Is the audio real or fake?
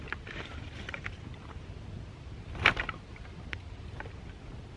real